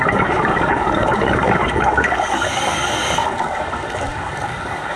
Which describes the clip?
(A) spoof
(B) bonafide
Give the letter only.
A